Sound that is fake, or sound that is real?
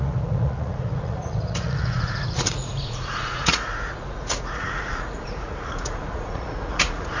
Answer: fake